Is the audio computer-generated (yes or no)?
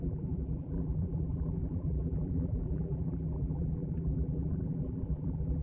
yes